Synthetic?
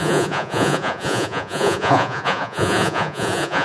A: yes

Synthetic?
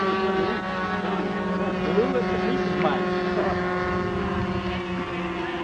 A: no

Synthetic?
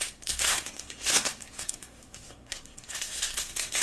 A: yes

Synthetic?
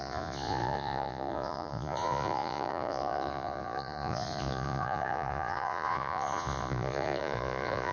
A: yes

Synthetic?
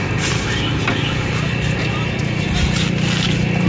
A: no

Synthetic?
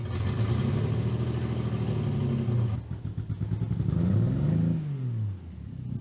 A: no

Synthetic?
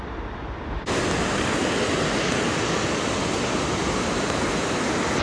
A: no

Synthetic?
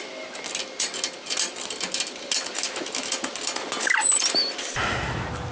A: no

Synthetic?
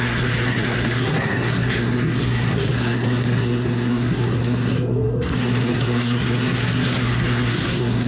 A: yes